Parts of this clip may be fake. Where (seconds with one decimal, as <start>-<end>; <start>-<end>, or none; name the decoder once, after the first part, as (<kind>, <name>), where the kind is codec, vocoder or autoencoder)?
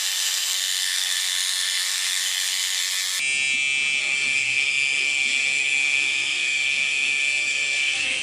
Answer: 0.0-2.8 (codec, SNAC); 4.0-8.2